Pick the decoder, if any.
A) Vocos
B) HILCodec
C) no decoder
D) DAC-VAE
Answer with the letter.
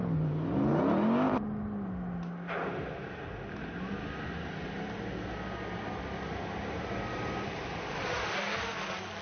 C